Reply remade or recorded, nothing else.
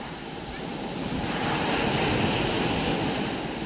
recorded